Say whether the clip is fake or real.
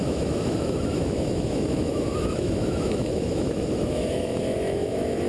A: fake